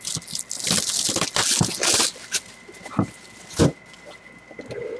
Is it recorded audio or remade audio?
recorded